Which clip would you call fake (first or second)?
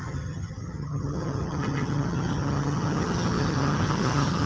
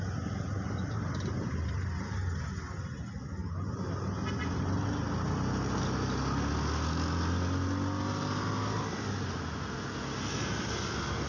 first